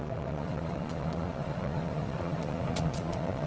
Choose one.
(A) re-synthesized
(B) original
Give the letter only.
A